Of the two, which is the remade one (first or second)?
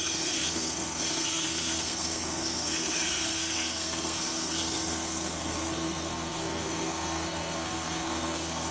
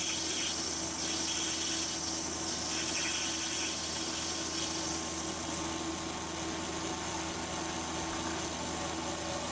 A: first